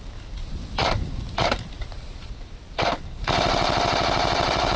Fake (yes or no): no